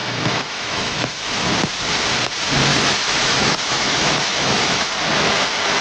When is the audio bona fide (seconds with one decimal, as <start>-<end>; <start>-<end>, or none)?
1.2-2.7; 4.9-5.8

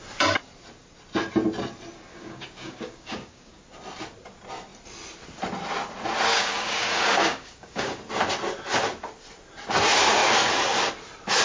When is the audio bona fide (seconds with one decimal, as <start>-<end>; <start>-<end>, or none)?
0.0-2.1; 3.6-6.3; 8.1-11.4

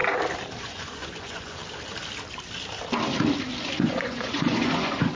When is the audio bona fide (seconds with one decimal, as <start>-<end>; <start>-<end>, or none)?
0.0-0.6; 1.6-3.6

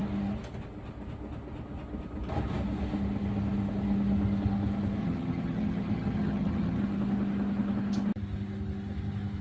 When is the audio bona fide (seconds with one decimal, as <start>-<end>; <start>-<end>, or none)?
0.0-5.0; 6.8-9.4

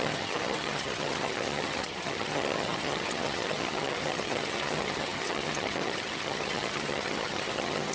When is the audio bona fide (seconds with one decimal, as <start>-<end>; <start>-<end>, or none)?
none

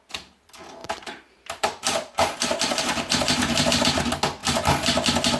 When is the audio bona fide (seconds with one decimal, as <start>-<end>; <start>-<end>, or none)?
0.0-0.8; 4.0-5.4

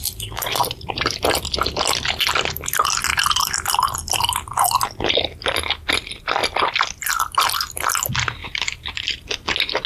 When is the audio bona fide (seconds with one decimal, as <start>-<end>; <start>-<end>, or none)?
0.0-0.6; 1.4-8.4; 9.0-9.9